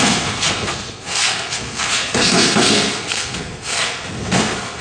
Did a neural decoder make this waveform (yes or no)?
yes